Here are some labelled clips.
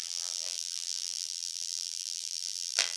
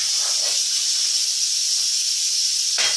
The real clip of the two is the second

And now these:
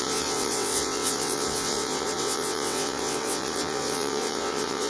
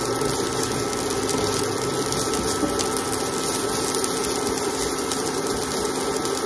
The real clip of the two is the second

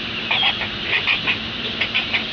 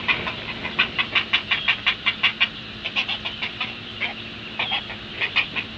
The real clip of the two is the second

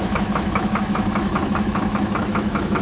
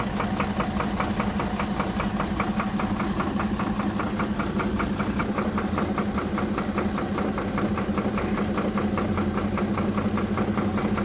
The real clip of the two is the second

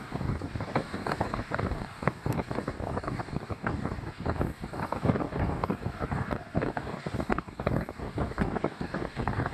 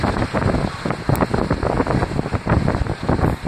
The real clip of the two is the second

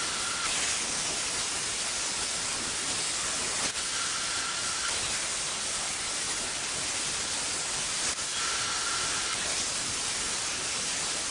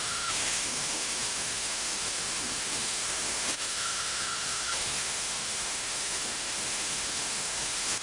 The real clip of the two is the first